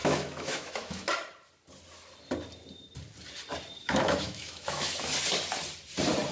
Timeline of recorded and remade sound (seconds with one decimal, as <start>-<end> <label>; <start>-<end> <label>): 0.0-1.1 remade; 1.1-3.8 recorded; 3.8-5.1 remade; 5.1-6.3 recorded